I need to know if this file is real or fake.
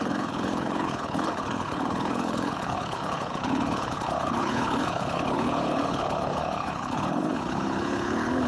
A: fake